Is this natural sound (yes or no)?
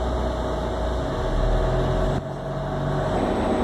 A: yes